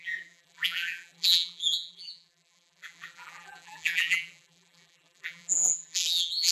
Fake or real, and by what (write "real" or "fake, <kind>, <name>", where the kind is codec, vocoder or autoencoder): fake, vocoder, BigVGAN v2